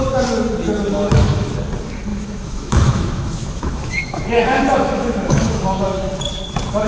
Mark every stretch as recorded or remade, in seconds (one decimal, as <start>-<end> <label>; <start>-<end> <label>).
0.0-0.9 recorded; 0.9-1.5 remade; 1.5-2.1 recorded; 2.1-6.1 remade; 6.1-6.9 recorded